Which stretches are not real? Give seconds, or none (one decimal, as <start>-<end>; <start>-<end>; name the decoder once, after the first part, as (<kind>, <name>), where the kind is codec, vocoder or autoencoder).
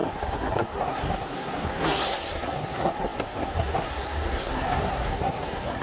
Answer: 0.0-5.8 (codec, SNAC)